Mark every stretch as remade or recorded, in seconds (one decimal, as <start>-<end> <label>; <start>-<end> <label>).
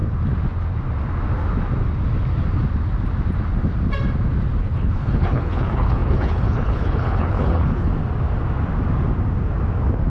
0.0-4.6 recorded; 4.6-7.9 remade; 7.9-10.1 recorded